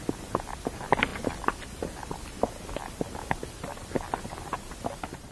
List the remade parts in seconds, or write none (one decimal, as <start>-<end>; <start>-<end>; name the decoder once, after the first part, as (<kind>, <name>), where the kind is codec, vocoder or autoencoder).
none